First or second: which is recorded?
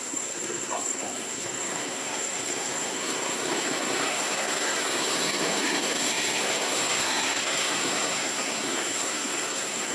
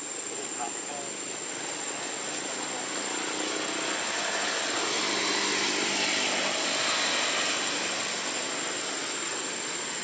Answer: second